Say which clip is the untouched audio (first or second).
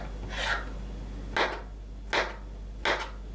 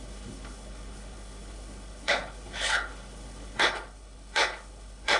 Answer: first